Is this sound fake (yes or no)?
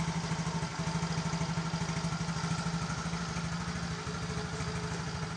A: no